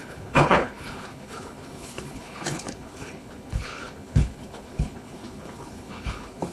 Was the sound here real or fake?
fake